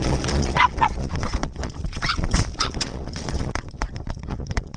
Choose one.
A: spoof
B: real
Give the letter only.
A